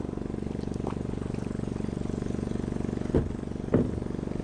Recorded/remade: recorded